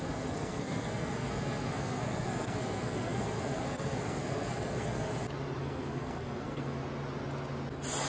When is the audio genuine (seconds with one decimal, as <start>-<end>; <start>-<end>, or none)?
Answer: 5.1-5.6; 6.8-8.1